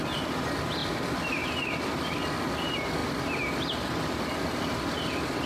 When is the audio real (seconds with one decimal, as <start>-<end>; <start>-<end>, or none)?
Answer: 0.0-0.8; 2.2-5.5